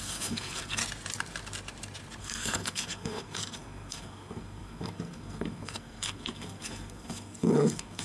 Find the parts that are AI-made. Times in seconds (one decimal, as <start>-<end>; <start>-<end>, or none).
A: 0.0-0.8; 2.2-8.0